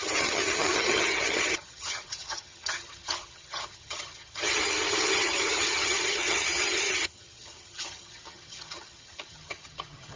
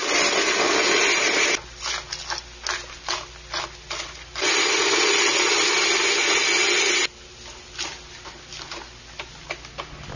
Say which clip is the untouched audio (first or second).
second